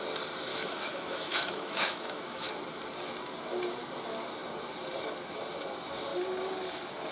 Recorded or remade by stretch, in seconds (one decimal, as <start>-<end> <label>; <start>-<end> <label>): 0.0-0.5 recorded; 0.5-2.5 remade; 2.5-7.1 recorded